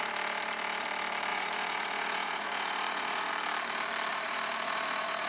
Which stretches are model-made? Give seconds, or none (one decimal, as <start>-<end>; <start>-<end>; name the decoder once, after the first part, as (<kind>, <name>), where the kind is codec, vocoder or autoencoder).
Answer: 1.3-3.3 (vocoder, Vocos); 4.1-5.3